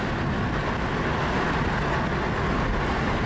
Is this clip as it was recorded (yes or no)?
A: yes